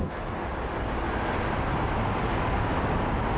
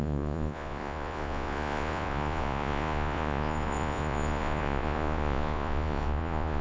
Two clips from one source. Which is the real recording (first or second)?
first